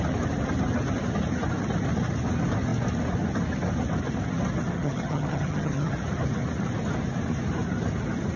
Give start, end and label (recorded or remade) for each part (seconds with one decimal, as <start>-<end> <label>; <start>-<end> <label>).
0.0-4.7 recorded; 4.7-5.9 remade; 5.9-8.4 recorded